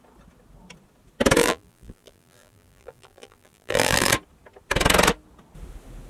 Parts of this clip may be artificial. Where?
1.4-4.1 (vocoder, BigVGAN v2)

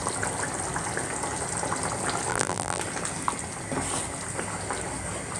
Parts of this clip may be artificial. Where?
2.3-2.8 (vocoder, BigVGAN v2)

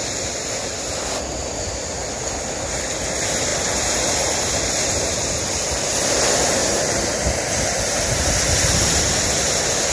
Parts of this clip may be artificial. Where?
6.6-8.3 (vocoder, BigVGAN v2)

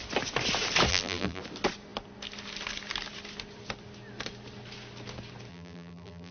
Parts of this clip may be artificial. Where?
0.9-1.4 (vocoder, BigVGAN v2); 5.5-6.3

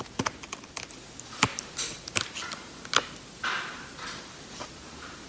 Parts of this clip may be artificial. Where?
0.0-1.5 (vocoder, BigVGAN v2); 4.2-5.3